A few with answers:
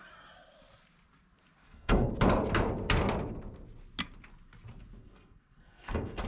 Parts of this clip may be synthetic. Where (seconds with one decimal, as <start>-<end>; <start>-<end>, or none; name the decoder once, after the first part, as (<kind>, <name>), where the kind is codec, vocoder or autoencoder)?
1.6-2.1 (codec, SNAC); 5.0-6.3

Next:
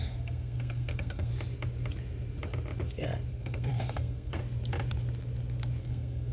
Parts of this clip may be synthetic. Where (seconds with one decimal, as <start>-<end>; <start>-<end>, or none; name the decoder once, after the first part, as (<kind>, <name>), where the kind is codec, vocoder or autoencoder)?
0.0-1.3 (codec, SNAC); 3.3-4.4; 5.8-6.3

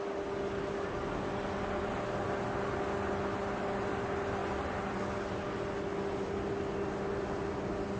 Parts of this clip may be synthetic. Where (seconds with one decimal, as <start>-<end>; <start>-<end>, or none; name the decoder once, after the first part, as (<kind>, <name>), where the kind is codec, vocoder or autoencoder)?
none

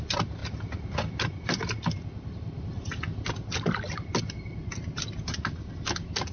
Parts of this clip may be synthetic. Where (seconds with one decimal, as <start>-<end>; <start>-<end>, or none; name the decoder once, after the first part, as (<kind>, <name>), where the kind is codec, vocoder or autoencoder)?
none